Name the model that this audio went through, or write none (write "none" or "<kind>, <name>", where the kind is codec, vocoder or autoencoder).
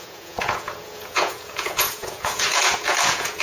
vocoder, Vocos